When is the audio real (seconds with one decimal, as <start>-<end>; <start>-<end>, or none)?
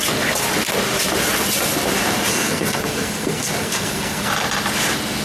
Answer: 0.0-2.3; 4.3-5.2